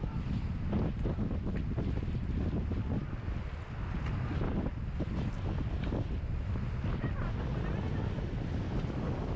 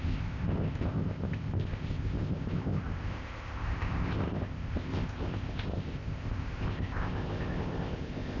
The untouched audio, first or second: first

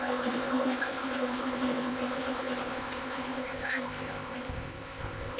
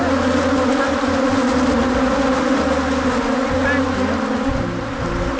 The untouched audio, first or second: second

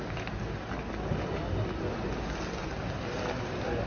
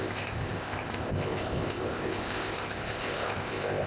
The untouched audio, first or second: first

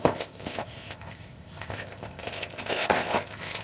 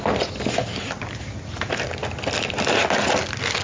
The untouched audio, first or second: second